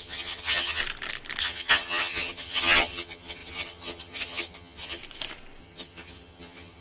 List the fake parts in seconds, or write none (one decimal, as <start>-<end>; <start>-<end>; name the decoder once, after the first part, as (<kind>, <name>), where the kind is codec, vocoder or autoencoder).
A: 0.0-0.8 (vocoder, HiFi-GAN); 1.4-5.0; 5.6-6.8